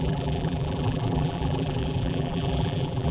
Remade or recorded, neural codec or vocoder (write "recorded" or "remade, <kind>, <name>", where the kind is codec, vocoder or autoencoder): remade, vocoder, BigVGAN v2